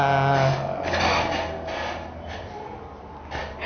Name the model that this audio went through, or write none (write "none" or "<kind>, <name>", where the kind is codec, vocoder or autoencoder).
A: none